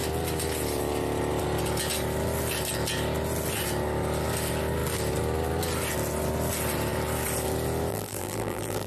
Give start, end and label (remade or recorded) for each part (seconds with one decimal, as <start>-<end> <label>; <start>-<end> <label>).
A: 0.0-7.9 recorded; 7.9-8.9 remade